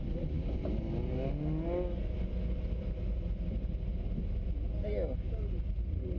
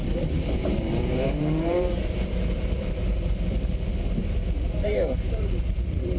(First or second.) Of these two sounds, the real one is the first